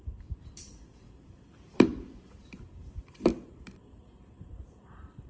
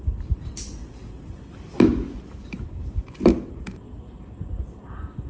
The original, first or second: second